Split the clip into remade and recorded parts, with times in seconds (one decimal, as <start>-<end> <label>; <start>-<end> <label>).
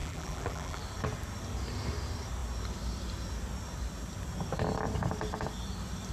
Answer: 0.0-0.8 remade; 0.8-6.1 recorded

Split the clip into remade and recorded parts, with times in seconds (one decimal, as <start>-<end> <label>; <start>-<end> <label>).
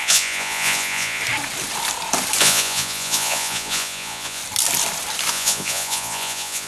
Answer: 0.0-1.2 remade; 1.2-2.4 recorded; 2.4-4.4 remade; 4.4-5.3 recorded; 5.3-6.7 remade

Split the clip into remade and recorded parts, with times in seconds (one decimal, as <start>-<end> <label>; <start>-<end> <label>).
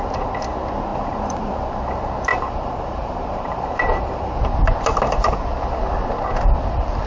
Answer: 0.0-0.9 recorded; 0.9-1.5 remade; 1.5-2.3 recorded; 2.3-4.4 remade; 4.4-7.1 recorded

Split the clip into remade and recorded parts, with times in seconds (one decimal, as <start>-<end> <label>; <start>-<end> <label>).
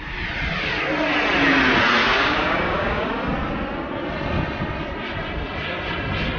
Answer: 0.0-2.0 recorded; 2.0-3.1 remade; 3.1-6.4 recorded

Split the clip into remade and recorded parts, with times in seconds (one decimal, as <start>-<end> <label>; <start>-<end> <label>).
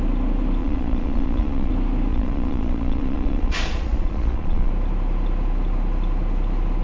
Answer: 0.0-0.6 recorded; 0.6-1.7 remade; 1.7-2.1 recorded; 2.1-4.7 remade; 4.7-6.8 recorded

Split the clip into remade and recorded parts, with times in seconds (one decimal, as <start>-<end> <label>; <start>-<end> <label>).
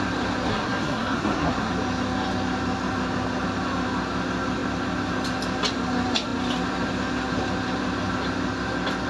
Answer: 0.0-0.5 recorded; 0.5-1.7 remade; 1.7-9.1 recorded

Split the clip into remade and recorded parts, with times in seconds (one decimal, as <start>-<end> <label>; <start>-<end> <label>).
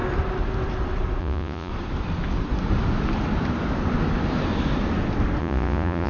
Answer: 0.0-1.2 recorded; 1.2-1.7 remade; 1.7-5.4 recorded; 5.4-6.1 remade